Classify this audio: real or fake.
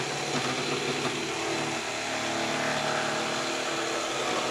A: real